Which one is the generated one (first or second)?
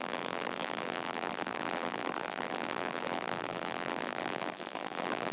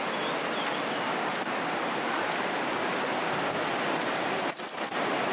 first